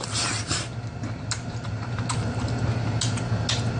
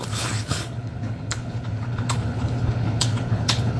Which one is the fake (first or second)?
second